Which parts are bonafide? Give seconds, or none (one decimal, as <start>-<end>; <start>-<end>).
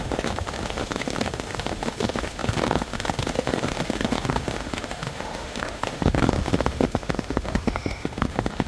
none